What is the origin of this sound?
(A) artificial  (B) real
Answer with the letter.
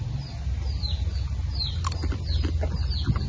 B